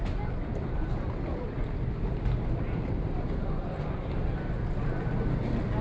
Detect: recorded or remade recorded